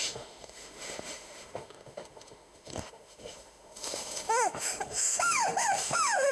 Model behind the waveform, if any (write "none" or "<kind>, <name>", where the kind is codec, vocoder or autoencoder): autoencoder, DAC-VAE